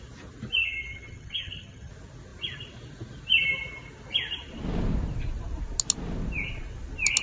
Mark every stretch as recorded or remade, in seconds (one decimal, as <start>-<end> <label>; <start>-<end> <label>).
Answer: 0.0-0.6 recorded; 0.6-1.9 remade; 1.9-7.2 recorded